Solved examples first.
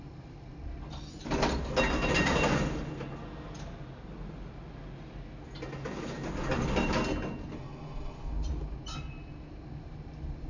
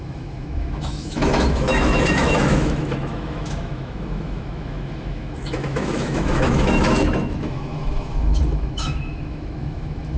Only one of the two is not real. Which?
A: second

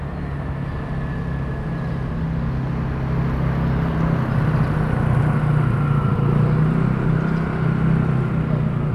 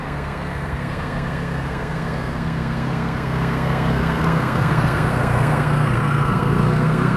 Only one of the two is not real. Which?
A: second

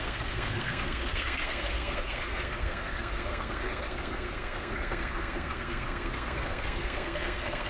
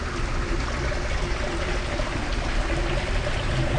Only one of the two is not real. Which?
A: first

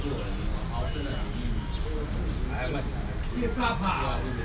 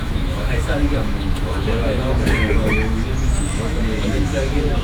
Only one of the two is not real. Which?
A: second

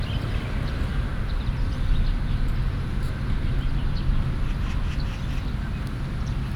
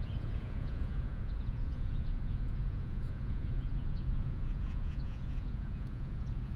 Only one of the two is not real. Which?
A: second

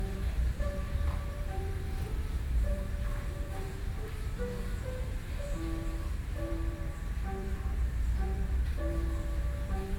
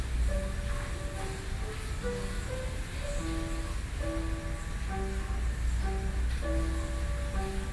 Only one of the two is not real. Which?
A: first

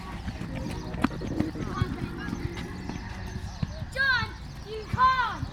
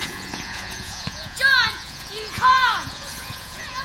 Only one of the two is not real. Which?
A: second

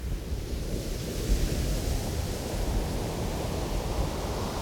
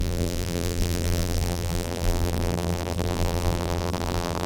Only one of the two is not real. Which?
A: second